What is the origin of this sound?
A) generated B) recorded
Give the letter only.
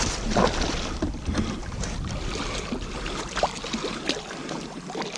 B